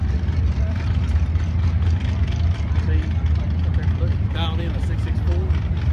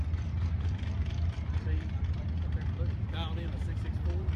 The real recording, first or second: first